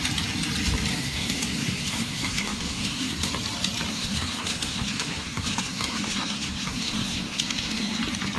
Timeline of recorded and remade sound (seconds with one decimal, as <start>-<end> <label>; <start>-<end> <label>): 0.0-0.9 recorded; 0.9-3.3 remade; 3.3-3.9 recorded; 3.9-8.0 remade; 8.0-8.4 recorded